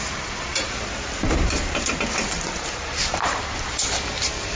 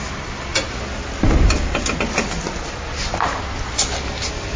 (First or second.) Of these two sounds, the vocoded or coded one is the first